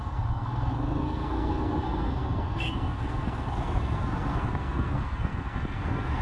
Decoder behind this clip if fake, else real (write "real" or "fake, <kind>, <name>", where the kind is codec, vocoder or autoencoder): fake, codec, SNAC